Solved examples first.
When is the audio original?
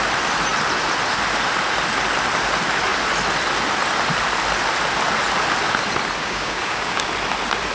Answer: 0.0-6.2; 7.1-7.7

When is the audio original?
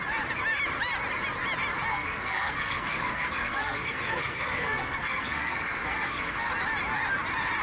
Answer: 0.0-1.9; 6.5-7.6